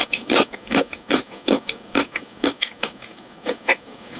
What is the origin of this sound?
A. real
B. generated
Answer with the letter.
B